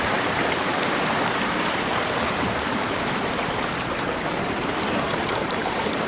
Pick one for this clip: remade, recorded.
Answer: remade